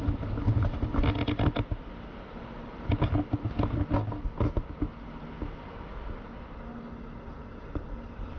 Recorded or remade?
recorded